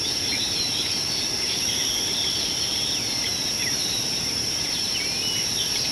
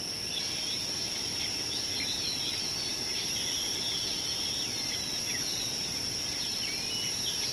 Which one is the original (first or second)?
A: second